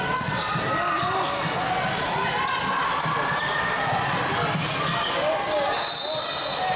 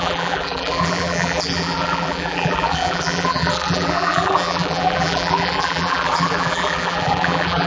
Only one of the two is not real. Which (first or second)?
second